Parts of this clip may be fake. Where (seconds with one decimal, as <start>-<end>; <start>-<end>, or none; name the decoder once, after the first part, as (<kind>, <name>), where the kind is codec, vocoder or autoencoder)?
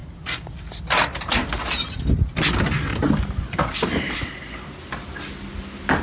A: none